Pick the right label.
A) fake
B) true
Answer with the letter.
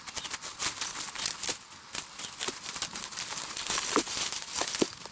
B